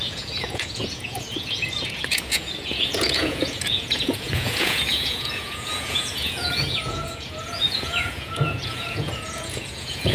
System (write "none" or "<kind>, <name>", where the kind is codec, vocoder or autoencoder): vocoder, Vocos